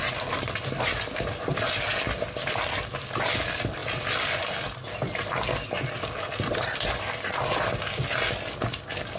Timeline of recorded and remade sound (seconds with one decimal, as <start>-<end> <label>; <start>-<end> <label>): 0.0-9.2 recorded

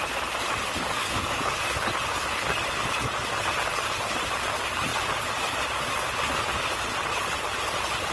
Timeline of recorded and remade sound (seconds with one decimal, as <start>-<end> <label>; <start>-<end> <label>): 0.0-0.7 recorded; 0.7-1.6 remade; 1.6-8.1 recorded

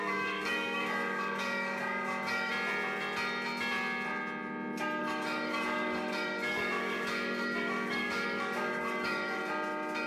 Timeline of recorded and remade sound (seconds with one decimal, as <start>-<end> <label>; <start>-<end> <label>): 0.0-2.5 remade; 2.5-5.0 recorded; 5.0-9.4 remade; 9.4-10.1 recorded

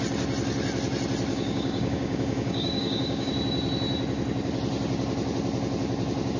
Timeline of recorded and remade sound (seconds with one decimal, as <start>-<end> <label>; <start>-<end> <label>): 0.0-1.3 recorded; 1.3-3.3 remade; 3.3-6.4 recorded

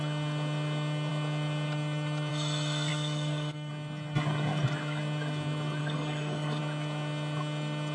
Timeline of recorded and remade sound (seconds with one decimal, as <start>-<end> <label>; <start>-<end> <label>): 0.0-2.9 recorded; 2.9-3.7 remade; 3.7-5.8 recorded; 5.8-6.6 remade; 6.6-7.9 recorded